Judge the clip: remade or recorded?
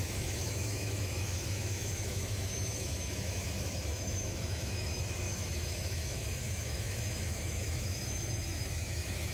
remade